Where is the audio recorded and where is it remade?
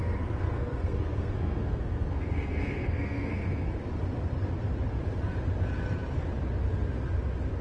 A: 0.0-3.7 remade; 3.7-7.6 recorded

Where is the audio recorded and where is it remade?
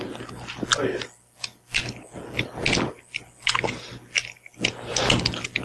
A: 0.0-5.6 recorded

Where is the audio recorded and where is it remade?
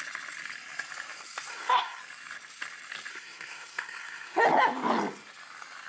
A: 0.0-1.5 recorded; 1.5-2.0 remade; 2.0-3.1 recorded; 3.1-4.4 remade; 4.4-5.9 recorded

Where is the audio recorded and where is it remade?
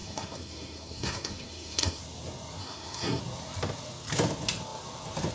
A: 0.0-2.0 remade; 2.0-2.6 recorded; 2.6-3.2 remade; 3.2-5.3 recorded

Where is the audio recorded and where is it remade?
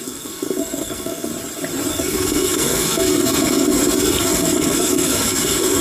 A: 0.0-1.3 remade; 1.3-1.9 recorded; 1.9-5.8 remade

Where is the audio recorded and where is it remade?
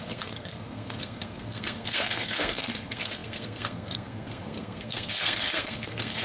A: 0.0-6.2 remade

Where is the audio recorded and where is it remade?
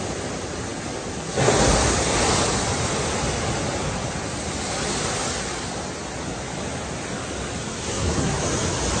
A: 0.0-7.8 recorded; 7.8-8.4 remade; 8.4-9.0 recorded